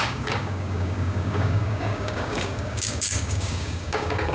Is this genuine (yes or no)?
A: no